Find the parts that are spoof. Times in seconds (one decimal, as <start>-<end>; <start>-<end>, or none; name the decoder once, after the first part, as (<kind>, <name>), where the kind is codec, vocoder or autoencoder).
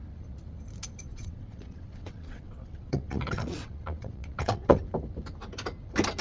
1.1-4.8 (vocoder, WaveNeXt)